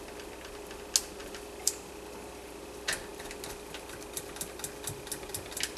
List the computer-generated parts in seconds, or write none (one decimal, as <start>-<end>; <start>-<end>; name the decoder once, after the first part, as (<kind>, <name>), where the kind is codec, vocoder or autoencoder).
1.2-1.9 (vocoder, BigVGAN v2)